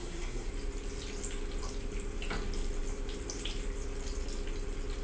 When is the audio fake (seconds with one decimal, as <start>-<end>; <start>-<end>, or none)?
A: 0.0-0.5